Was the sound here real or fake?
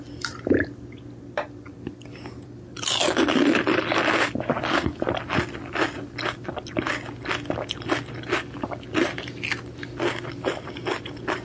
real